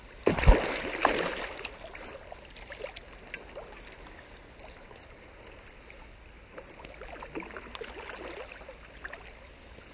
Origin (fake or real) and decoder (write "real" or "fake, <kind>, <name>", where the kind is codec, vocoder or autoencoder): real